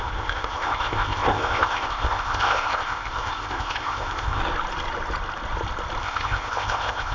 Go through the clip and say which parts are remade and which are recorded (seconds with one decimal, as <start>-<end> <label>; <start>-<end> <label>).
0.0-4.4 remade; 4.4-6.0 recorded; 6.0-7.1 remade